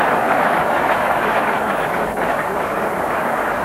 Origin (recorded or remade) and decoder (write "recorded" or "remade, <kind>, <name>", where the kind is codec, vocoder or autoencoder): remade, codec, DAC